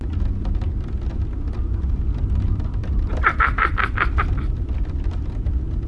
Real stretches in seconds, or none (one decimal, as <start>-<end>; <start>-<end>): 0.0-2.8; 4.6-5.9